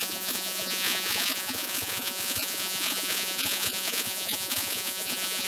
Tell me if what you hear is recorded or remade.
remade